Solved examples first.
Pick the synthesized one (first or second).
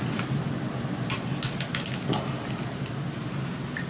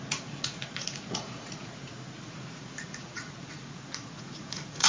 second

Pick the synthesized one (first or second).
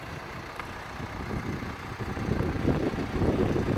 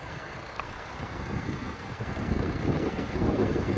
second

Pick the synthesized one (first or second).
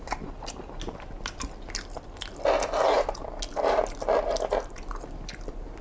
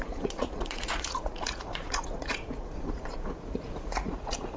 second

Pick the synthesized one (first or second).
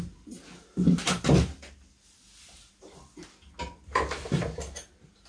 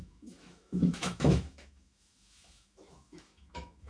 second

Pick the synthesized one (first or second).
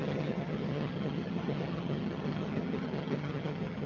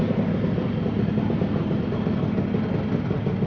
first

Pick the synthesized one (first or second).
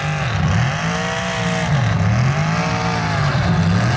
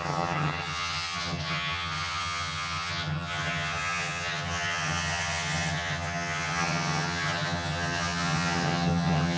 second